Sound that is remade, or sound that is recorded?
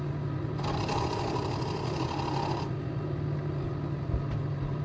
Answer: recorded